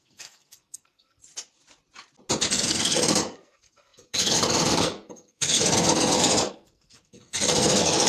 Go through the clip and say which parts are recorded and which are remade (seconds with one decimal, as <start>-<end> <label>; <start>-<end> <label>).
0.0-1.2 remade; 1.2-2.5 recorded; 2.5-8.1 remade